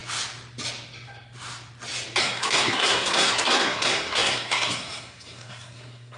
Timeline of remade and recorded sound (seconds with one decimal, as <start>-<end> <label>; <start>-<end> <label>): 0.0-2.2 recorded; 2.2-6.2 remade